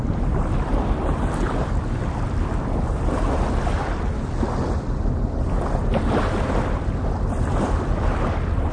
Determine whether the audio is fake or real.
real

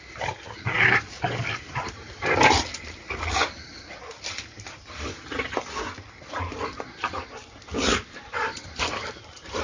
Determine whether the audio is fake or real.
real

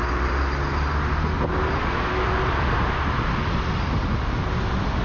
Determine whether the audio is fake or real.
real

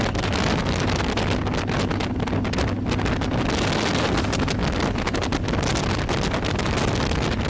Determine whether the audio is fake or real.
real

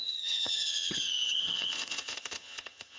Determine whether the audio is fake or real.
fake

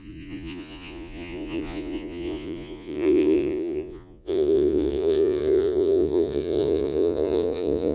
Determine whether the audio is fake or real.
fake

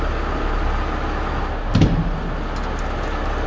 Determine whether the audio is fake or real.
real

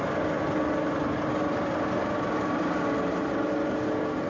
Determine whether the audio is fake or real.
real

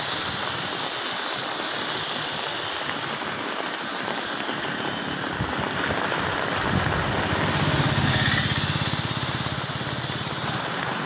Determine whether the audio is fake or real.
real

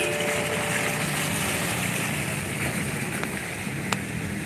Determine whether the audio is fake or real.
real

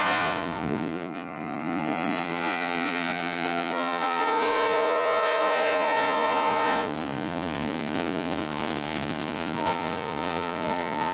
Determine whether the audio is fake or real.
fake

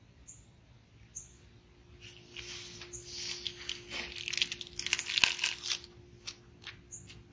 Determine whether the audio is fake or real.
real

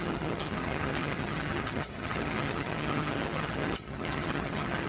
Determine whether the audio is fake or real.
fake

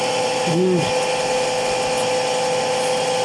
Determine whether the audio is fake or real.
real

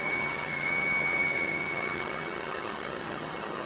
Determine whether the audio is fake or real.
fake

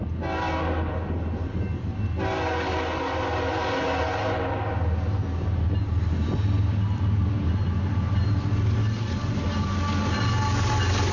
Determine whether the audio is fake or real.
real